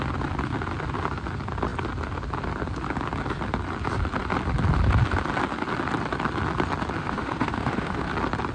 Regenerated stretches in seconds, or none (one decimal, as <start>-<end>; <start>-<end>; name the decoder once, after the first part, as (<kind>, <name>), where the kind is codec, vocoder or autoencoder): 7.0-8.1 (autoencoder, DAC-VAE)